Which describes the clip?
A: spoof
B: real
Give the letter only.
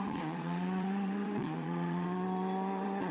A